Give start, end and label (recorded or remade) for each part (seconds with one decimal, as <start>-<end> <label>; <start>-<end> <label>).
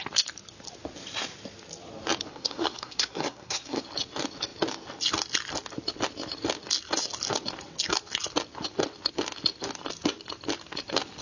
0.0-2.3 recorded; 2.3-3.8 remade; 3.8-11.2 recorded